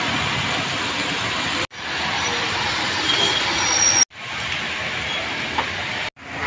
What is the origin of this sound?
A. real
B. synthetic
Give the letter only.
A